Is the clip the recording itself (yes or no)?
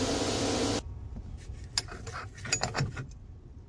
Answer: yes